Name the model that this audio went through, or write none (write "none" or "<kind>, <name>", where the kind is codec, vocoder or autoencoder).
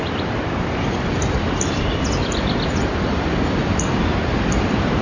vocoder, BigVGAN v2